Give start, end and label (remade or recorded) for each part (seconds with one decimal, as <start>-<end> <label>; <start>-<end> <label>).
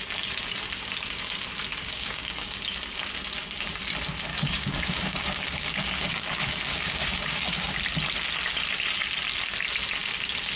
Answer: 0.0-1.7 recorded; 1.7-2.6 remade; 2.6-4.3 recorded; 4.3-7.8 remade; 7.8-10.6 recorded